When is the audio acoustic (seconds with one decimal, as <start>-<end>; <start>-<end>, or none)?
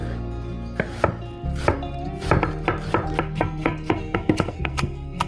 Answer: 0.0-3.2